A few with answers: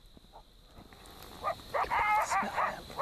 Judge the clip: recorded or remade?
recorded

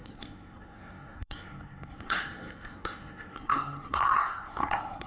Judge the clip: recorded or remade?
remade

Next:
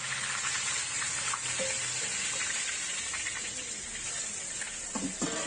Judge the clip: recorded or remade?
recorded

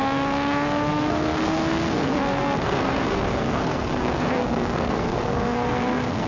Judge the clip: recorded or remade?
remade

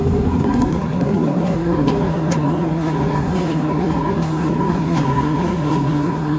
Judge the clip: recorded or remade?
remade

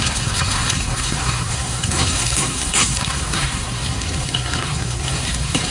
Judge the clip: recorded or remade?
remade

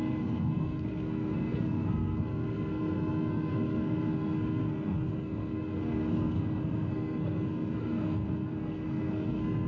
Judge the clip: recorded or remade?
remade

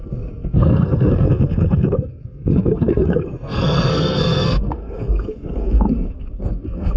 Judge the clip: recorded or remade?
remade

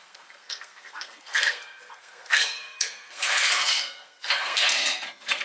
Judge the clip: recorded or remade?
remade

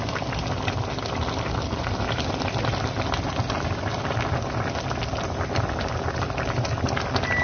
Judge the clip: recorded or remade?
recorded